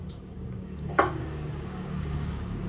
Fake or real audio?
fake